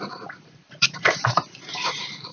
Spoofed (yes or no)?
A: yes